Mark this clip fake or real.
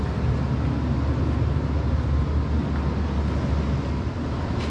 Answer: real